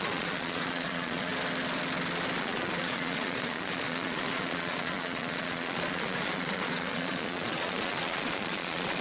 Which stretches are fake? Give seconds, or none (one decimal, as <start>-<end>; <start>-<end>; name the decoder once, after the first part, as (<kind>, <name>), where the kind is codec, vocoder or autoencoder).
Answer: 0.0-1.3 (vocoder, Vocos); 2.4-9.0